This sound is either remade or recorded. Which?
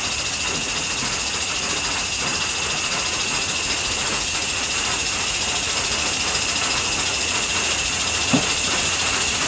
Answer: remade